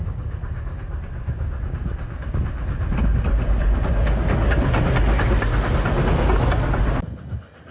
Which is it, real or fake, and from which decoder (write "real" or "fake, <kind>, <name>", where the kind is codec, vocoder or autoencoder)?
real